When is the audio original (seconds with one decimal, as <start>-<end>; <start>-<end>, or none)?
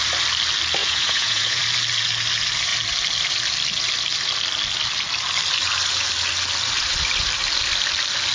0.0-0.8; 1.6-8.3